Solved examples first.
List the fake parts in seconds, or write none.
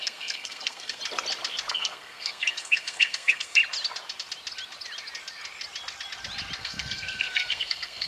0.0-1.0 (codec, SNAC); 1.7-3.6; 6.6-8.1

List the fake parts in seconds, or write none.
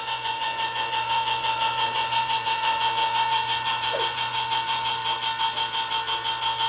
0.0-5.0 (vocoder, Vocos)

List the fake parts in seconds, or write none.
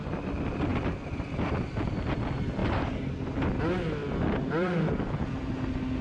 0.7-2.2 (vocoder, BigVGAN v2); 2.6-3.6; 4.0-5.4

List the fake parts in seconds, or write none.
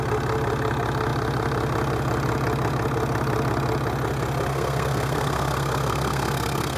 4.5-6.8 (codec, SNAC)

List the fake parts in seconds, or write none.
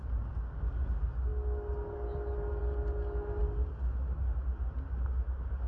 none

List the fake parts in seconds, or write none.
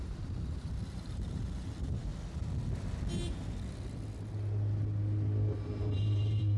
0.0-2.1 (vocoder, BigVGAN v2); 5.5-6.6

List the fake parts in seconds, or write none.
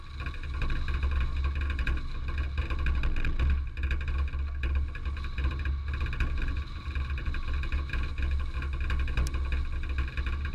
none